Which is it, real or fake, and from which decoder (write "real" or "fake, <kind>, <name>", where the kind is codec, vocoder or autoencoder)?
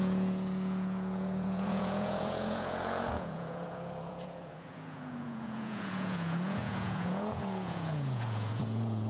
fake, vocoder, Vocos